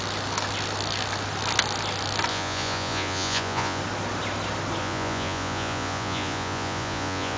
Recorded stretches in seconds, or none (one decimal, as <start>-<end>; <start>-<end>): 0.0-2.3; 3.8-4.8